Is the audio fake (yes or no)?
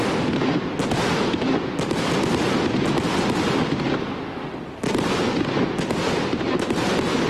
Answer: no